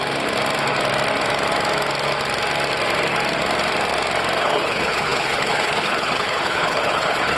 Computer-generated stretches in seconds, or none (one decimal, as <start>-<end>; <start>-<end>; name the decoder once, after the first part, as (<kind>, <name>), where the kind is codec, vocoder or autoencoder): 4.4-7.4 (codec, HILCodec)